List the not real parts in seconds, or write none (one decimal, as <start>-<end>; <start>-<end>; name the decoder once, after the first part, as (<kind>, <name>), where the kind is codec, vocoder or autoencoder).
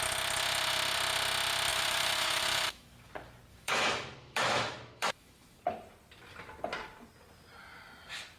1.7-3.1 (autoencoder, DAC-VAE); 3.5-5.6